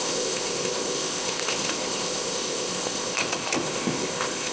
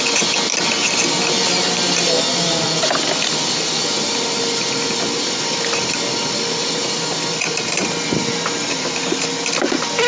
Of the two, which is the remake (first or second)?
first